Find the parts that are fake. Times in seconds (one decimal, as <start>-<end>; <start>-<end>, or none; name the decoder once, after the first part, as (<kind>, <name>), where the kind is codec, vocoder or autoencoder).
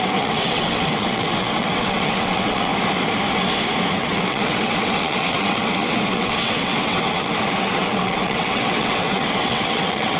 0.0-2.7 (vocoder, WaveNeXt); 3.9-10.2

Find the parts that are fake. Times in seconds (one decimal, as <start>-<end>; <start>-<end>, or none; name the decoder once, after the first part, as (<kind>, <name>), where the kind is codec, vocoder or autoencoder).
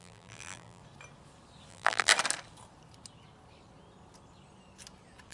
0.0-0.8 (vocoder, BigVGAN v2); 1.7-2.1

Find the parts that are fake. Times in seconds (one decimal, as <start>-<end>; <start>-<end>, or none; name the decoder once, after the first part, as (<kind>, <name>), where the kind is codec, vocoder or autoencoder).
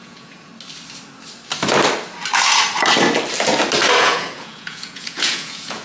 0.0-0.5 (vocoder, Vocos); 4.0-5.8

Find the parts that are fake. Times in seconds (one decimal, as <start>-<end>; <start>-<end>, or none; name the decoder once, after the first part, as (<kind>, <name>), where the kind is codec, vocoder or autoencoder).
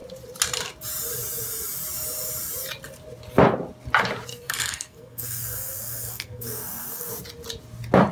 4.3-7.1 (codec, SNAC)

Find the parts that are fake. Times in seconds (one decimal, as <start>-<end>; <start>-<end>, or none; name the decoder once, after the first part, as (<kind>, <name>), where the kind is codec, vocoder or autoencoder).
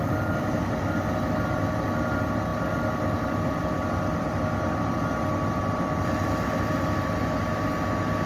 none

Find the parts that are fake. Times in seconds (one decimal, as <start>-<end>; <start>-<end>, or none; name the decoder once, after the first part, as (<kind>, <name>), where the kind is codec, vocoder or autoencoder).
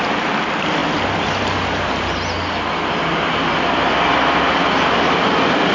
none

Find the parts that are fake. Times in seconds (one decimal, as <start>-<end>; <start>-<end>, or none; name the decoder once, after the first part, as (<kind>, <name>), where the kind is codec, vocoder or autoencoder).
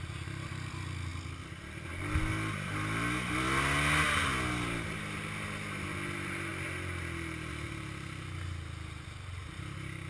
none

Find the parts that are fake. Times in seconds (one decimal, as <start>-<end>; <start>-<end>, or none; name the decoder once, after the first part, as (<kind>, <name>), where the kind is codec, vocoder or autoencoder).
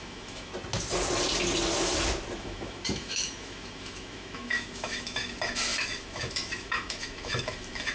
0.0-0.5 (autoencoder, DAC-VAE); 2.4-7.9